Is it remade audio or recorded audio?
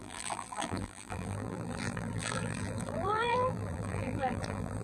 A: remade